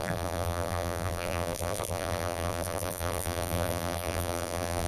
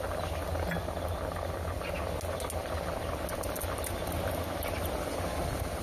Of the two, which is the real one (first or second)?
second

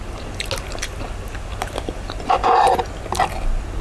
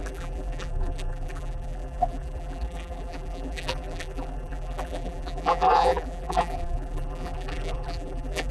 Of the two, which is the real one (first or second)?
first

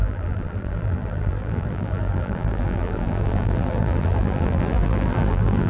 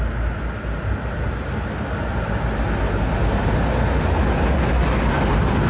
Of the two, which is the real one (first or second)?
second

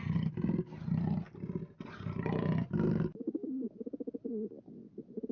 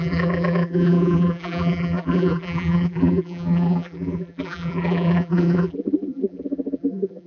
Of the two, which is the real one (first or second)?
first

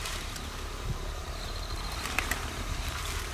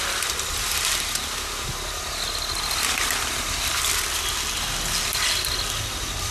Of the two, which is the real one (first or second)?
second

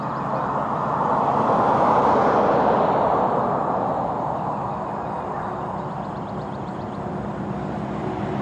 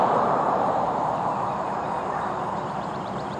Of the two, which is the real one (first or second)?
first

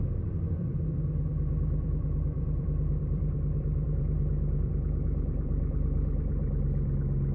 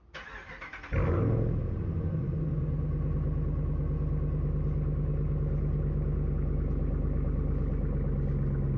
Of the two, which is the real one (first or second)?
second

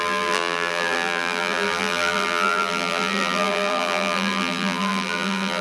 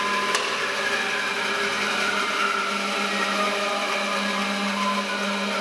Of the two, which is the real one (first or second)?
second